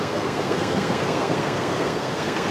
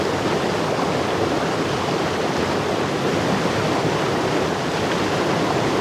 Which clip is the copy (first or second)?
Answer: first